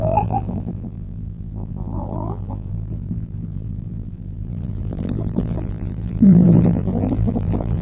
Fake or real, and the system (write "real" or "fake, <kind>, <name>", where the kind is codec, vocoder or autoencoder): fake, vocoder, BigVGAN v2